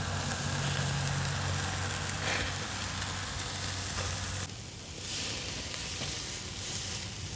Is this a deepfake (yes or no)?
no